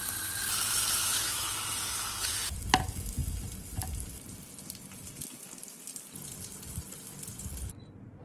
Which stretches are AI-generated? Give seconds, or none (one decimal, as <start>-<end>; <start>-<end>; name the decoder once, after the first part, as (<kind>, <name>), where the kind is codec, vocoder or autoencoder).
1.0-1.5 (autoencoder, DAC-VAE)